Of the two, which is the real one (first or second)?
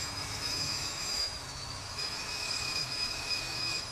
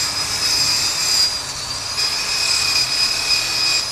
second